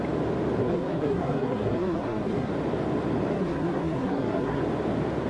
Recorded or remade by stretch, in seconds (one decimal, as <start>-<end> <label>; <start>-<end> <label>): 0.0-0.6 recorded; 0.6-2.5 remade; 2.5-3.3 recorded; 3.3-4.6 remade; 4.6-5.3 recorded